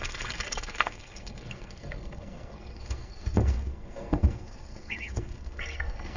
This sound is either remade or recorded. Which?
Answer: remade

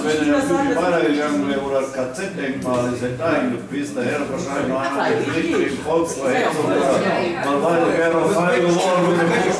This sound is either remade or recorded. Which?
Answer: recorded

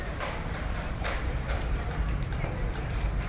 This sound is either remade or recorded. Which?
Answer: remade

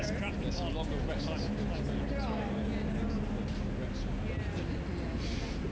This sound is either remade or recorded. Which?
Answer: recorded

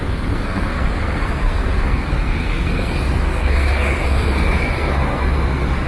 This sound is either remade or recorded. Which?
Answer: remade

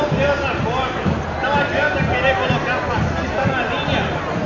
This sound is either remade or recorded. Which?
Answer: recorded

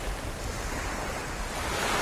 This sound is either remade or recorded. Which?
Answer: recorded